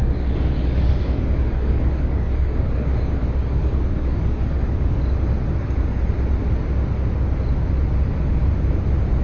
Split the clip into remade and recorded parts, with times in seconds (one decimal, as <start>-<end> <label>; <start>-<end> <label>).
0.0-5.0 remade; 5.0-9.2 recorded

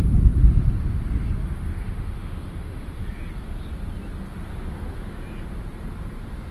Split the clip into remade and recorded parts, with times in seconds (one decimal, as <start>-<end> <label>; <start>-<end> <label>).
0.0-1.7 recorded; 1.7-3.0 remade; 3.0-6.5 recorded

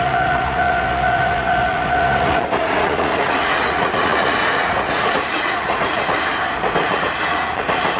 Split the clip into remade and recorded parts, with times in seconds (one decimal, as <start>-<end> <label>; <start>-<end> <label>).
0.0-6.3 remade; 6.3-6.8 recorded; 6.8-8.0 remade

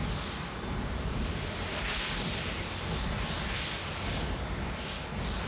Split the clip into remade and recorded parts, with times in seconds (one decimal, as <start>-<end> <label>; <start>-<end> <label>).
0.0-5.5 recorded

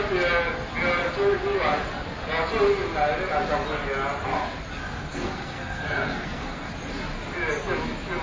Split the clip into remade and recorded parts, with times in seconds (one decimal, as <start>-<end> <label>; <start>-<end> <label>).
0.0-5.1 recorded; 5.1-6.7 remade; 6.7-8.2 recorded

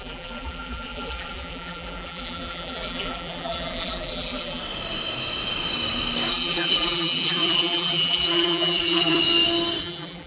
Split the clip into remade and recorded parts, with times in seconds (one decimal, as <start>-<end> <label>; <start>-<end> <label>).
0.0-4.6 remade; 4.6-6.3 recorded; 6.3-9.2 remade; 9.2-9.8 recorded; 9.8-10.3 remade

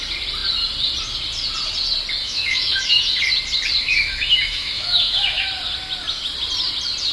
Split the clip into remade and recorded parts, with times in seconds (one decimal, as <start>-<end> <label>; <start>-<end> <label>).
0.0-2.2 recorded; 2.2-3.2 remade; 3.2-3.8 recorded; 3.8-5.5 remade; 5.5-7.1 recorded